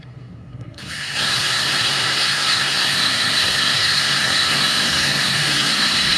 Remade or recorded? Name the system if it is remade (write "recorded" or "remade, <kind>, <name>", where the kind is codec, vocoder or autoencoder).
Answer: remade, codec, SNAC